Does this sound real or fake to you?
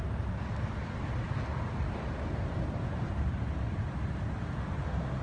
real